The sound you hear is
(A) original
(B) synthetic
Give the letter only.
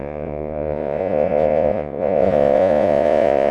B